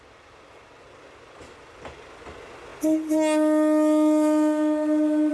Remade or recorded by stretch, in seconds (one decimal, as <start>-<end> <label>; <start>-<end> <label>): 0.0-5.3 recorded